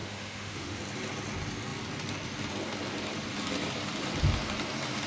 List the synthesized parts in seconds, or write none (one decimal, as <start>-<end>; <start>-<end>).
0.0-0.8